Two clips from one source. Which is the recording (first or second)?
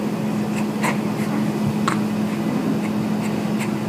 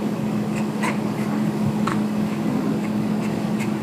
first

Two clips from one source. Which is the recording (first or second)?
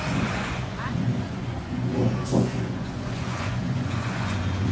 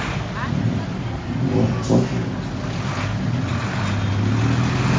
second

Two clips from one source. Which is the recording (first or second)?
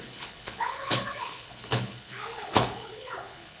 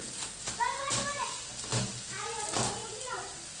second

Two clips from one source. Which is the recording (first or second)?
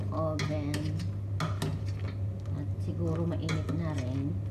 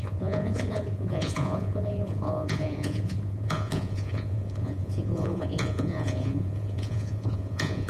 first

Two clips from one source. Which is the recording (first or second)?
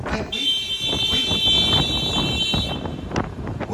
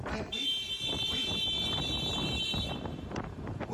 first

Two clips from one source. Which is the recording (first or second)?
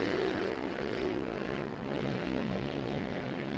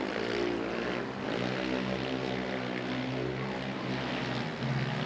second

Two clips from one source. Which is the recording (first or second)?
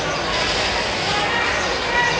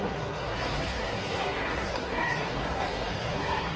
first